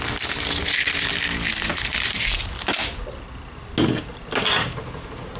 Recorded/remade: recorded